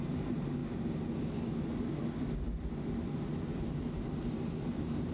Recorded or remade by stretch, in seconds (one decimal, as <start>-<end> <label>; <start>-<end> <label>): 0.0-0.6 remade; 0.6-3.7 recorded; 3.7-5.1 remade